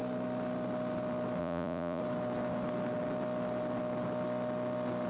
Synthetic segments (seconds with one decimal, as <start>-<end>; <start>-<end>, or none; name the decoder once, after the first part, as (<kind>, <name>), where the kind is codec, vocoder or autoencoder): 1.4-2.0 (vocoder, Vocos)